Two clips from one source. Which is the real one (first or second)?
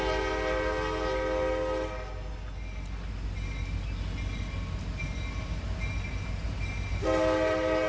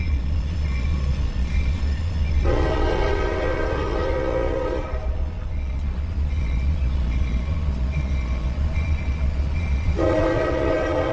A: first